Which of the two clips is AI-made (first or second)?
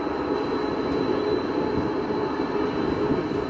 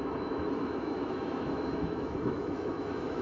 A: second